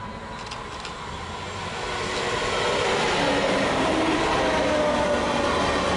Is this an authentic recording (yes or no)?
yes